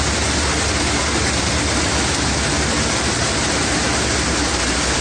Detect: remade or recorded recorded